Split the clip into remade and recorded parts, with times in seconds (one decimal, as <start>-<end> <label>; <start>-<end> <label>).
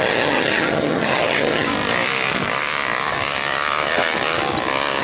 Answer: 0.0-1.7 remade; 1.7-5.0 recorded